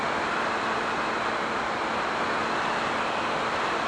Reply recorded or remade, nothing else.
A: recorded